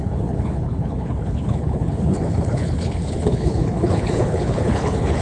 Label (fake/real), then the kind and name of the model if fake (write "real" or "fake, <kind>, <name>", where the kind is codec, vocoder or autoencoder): fake, codec, HILCodec